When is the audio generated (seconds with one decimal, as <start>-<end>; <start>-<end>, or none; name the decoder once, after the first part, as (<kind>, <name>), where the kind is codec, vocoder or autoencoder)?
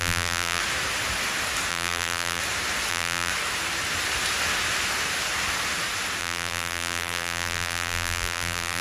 0.0-0.6 (vocoder, BigVGAN v2); 1.7-2.4; 2.9-3.3; 6.2-8.8